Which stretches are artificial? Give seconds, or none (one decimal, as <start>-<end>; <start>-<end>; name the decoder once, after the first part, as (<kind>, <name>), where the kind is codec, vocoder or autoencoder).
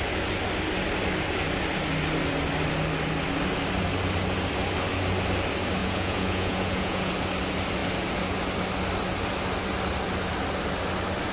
5.8-7.1 (vocoder, Vocos)